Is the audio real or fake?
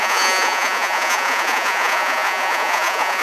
fake